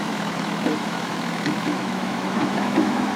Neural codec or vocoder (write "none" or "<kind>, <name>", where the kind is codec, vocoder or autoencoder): autoencoder, DAC-VAE